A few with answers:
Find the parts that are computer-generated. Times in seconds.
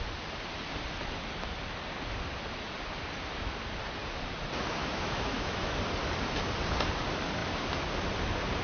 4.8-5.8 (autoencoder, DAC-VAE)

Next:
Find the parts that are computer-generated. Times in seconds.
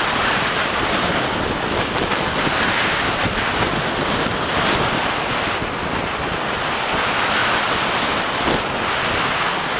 none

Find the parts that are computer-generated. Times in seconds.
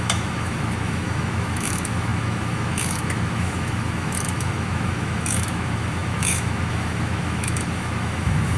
0.0-8.6 (autoencoder, DAC-VAE)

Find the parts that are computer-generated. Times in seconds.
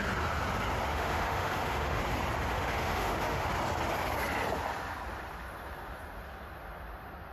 0.9-2.0 (autoencoder, DAC-VAE); 2.5-3.5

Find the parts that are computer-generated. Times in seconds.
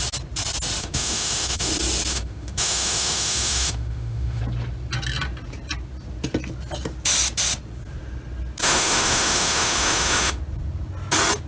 0.8-1.7 (autoencoder, DAC-VAE); 2.1-4.4; 8.6-10.4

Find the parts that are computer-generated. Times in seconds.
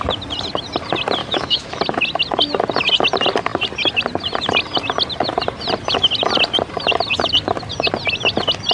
1.2-1.8 (autoencoder, DAC-VAE)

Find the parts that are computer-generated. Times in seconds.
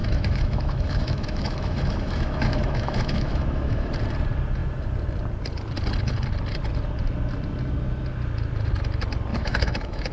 0.0-3.9 (autoencoder, DAC-VAE); 9.3-10.1